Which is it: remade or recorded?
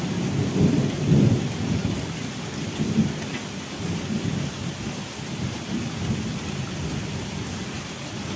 recorded